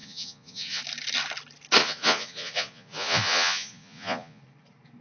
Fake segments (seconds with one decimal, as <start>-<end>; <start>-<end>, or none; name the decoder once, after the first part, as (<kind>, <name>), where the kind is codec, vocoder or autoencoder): 0.0-0.8 (vocoder, Vocos); 1.8-4.4